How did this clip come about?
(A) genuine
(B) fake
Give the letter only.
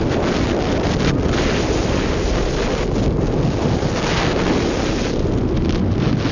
A